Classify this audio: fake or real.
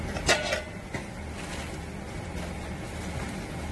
real